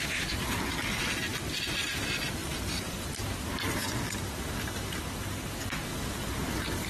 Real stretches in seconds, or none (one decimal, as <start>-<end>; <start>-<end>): 0.0-2.4; 4.6-5.9